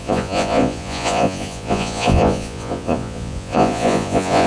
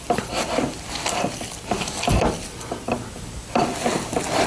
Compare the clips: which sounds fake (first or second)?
first